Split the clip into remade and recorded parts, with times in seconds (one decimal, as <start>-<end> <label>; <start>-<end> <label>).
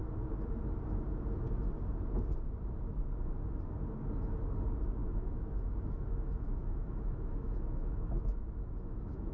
0.0-5.0 recorded; 5.0-9.3 remade